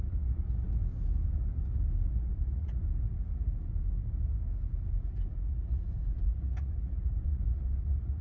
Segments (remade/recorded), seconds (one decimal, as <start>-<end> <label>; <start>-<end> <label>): 0.0-0.8 remade; 0.8-2.1 recorded; 2.1-2.8 remade; 2.8-5.4 recorded; 5.4-8.2 remade